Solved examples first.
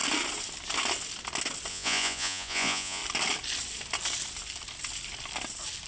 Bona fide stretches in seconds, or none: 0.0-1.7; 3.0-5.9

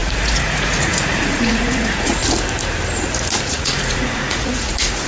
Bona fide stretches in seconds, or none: 2.2-3.4

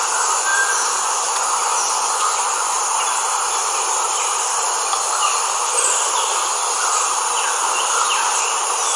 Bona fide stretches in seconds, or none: 0.0-0.5; 2.8-9.0

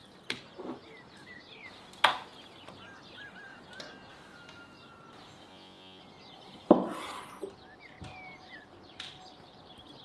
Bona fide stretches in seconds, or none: 0.0-5.5; 6.0-10.0

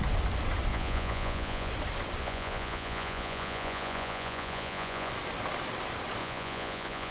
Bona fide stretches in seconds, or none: 0.0-0.7; 1.7-2.2; 5.1-6.2

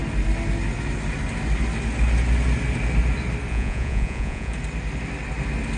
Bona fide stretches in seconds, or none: 0.0-3.5; 4.5-5.8

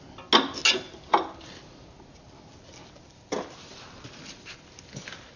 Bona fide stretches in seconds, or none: 0.0-5.4

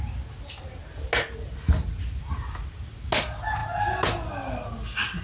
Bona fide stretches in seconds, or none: 0.0-5.2